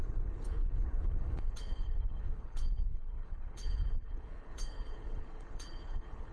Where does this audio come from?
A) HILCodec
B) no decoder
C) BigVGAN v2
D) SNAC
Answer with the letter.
A